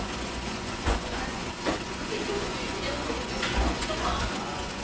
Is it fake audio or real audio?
fake